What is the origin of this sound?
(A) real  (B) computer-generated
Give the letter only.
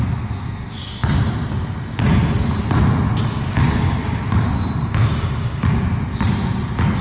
A